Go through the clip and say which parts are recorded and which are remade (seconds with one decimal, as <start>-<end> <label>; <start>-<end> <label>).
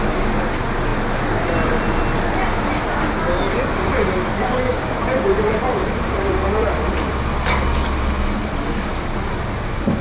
0.0-4.7 recorded; 4.7-7.1 remade; 7.1-10.0 recorded